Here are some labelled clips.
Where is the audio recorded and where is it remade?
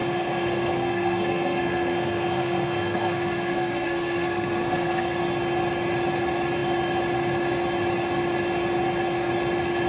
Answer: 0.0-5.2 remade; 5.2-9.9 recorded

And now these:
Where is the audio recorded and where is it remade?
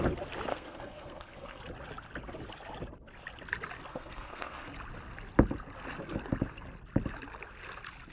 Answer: 0.0-0.5 recorded; 0.5-1.6 remade; 1.6-3.9 recorded; 3.9-4.7 remade; 4.7-8.1 recorded